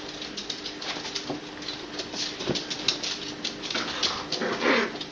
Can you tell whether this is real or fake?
real